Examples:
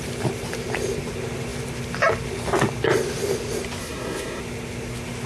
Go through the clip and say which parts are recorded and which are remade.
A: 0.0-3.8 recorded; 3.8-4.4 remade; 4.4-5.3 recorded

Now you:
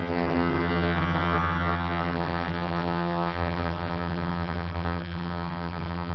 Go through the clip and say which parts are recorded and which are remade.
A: 0.0-6.1 remade

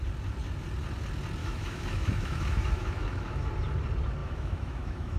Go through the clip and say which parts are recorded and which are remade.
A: 0.0-1.4 recorded; 1.4-3.5 remade; 3.5-4.2 recorded; 4.2-5.2 remade

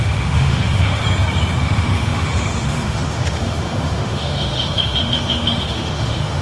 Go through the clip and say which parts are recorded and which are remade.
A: 0.0-1.0 remade; 1.0-1.6 recorded; 1.6-6.4 remade